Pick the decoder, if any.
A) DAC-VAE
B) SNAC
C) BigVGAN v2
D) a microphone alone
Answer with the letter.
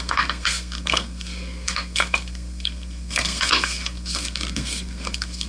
B